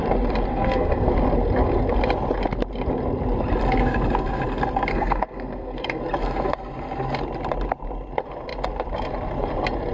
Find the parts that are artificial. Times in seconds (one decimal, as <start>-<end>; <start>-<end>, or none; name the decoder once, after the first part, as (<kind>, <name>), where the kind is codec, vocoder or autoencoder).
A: 0.5-1.1 (codec, SNAC); 4.9-6.0